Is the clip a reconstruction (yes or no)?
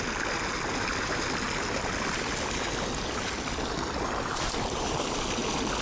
no